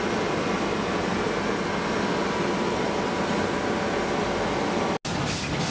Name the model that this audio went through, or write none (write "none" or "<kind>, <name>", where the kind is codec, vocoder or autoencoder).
none